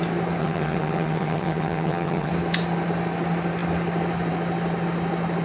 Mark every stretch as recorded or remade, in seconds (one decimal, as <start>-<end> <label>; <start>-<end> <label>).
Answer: 0.0-0.4 recorded; 0.4-2.3 remade; 2.3-5.4 recorded